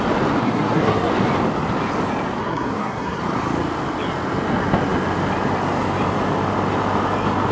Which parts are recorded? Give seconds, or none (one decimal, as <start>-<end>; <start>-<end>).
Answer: 0.0-0.4; 1.1-2.4; 3.2-7.5